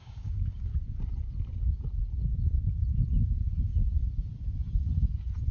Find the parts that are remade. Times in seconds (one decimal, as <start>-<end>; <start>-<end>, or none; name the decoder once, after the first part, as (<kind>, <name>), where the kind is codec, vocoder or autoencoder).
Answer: 0.0-0.6 (codec, DAC)